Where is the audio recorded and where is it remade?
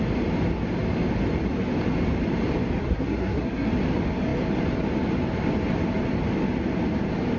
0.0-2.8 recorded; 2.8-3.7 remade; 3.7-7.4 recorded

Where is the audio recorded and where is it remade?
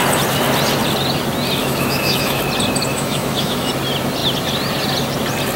0.0-1.6 recorded; 1.6-2.4 remade; 2.4-2.9 recorded; 2.9-3.7 remade; 3.7-5.6 recorded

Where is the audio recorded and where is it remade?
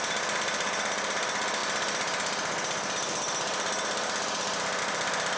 0.0-5.4 recorded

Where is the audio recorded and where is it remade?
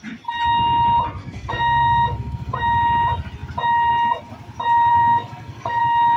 0.0-1.2 recorded; 1.2-2.6 remade; 2.6-4.9 recorded; 4.9-5.8 remade; 5.8-6.2 recorded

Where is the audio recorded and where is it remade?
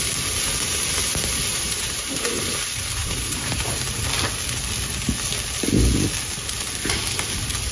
0.0-1.5 recorded; 1.5-2.5 remade; 2.5-3.0 recorded; 3.0-3.6 remade; 3.6-7.7 recorded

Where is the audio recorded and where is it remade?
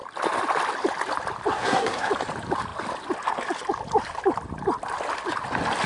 0.0-1.5 recorded; 1.5-2.1 remade; 2.1-5.9 recorded